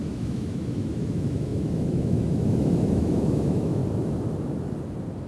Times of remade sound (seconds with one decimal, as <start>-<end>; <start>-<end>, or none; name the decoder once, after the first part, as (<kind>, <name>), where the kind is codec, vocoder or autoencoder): 0.0-3.8 (autoencoder, DAC-VAE)